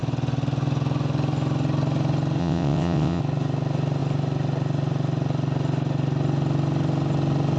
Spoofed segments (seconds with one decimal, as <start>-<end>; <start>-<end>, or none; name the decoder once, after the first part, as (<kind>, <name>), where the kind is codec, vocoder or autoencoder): 2.4-3.2 (vocoder, WaveNeXt)